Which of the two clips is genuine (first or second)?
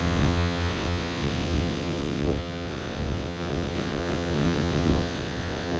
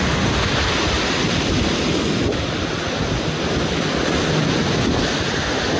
second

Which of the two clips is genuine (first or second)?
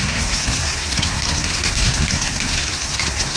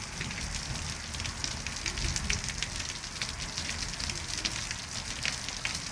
second